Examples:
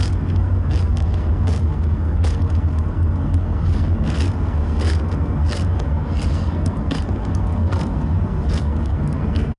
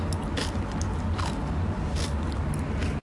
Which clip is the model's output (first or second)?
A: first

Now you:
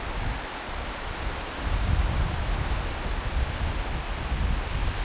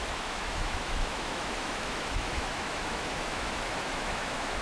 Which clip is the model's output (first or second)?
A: second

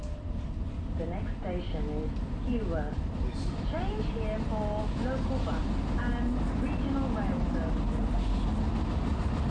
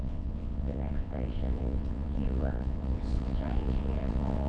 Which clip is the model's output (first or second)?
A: second